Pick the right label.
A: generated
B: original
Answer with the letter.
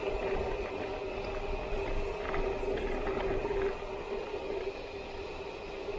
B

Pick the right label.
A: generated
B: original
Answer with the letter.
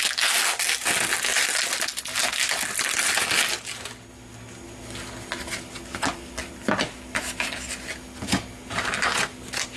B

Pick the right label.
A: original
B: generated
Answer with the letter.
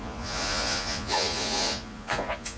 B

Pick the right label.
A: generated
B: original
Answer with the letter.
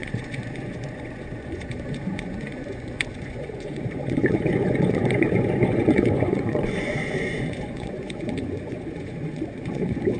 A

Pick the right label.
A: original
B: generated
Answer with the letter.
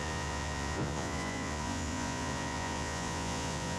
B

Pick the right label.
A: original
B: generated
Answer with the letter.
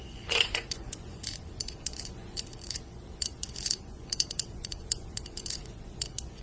B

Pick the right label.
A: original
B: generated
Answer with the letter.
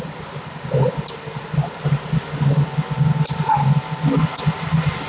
A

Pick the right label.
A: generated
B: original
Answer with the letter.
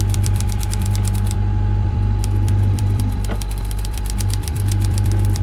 A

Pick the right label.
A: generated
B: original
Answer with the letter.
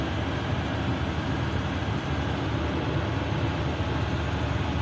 B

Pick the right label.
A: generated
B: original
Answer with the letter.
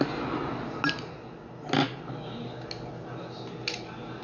B